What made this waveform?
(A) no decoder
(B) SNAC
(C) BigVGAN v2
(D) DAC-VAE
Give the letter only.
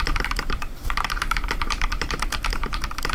C